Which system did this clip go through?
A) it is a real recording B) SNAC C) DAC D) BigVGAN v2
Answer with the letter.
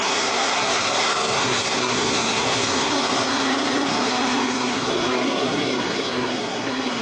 B